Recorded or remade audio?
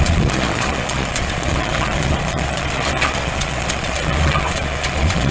remade